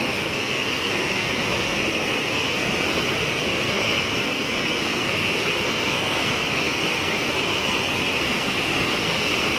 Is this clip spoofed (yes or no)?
yes